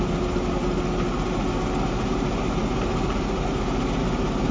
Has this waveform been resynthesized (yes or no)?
no